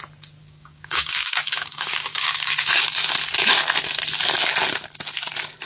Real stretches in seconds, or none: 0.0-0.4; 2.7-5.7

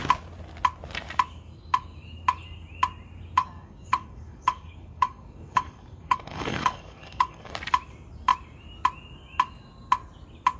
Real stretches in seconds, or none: 0.0-3.4; 7.5-10.6

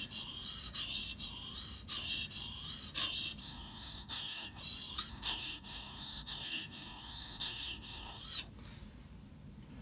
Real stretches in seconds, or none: 0.0-3.4; 4.6-5.1; 8.2-9.8

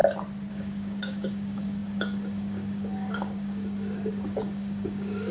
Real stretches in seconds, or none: 0.0-0.5

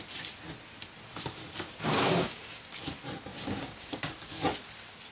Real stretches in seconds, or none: 0.0-1.9; 2.7-3.3; 4.0-5.1

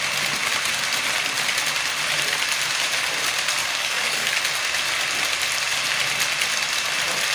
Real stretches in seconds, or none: 0.0-3.6; 4.4-7.3